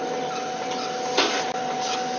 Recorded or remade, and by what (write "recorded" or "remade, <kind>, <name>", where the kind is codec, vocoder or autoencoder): recorded